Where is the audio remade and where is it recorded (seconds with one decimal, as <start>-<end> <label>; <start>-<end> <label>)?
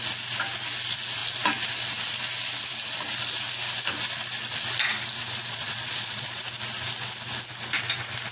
0.0-5.5 recorded; 5.5-6.4 remade; 6.4-8.3 recorded